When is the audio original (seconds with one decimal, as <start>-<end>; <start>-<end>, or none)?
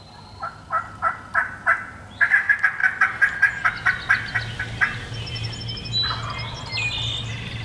0.0-7.6